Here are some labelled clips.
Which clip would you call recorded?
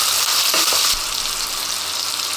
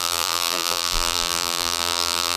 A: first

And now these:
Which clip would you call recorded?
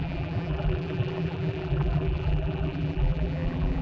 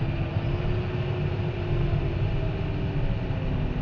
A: second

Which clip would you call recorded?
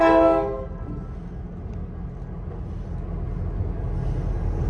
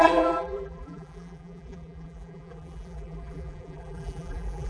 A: first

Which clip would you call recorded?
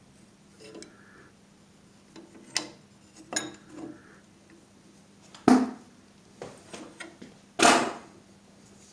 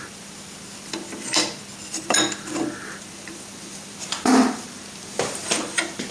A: first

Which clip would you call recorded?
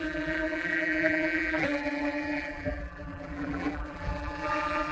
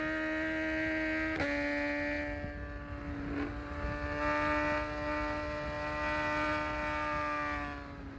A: second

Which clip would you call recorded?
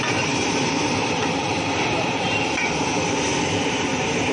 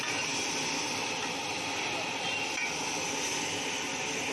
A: second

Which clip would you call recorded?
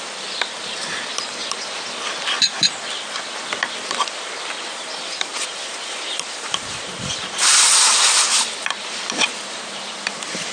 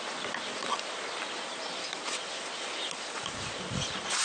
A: second